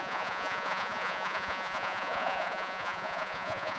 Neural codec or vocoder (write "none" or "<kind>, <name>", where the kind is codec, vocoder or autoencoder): vocoder, Vocos